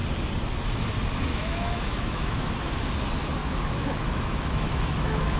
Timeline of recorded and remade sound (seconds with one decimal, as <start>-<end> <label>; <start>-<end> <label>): 0.0-1.3 recorded; 1.3-2.5 remade; 2.5-3.4 recorded; 3.4-5.4 remade

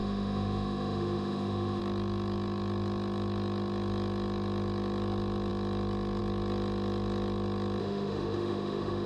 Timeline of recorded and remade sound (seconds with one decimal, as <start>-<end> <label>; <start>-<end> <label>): 0.0-1.8 remade; 1.8-7.8 recorded; 7.8-9.1 remade